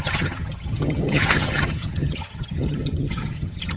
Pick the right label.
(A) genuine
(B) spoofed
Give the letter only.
B